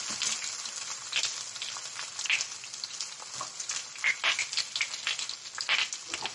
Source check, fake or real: real